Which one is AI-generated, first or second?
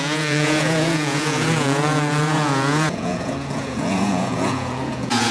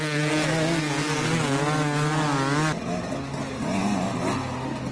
first